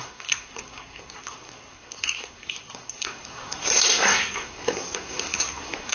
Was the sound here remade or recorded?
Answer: remade